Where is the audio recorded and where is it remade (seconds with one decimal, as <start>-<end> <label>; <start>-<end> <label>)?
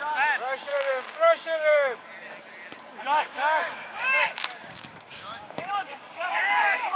0.0-0.7 recorded; 0.7-2.0 remade; 2.0-2.9 recorded; 2.9-7.0 remade